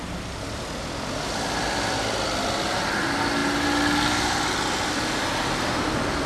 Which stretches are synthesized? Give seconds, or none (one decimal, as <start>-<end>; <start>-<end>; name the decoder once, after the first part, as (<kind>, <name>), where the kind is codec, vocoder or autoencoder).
none